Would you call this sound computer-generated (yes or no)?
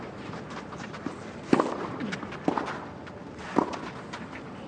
no